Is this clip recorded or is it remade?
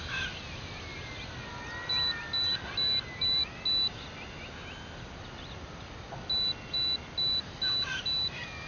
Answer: recorded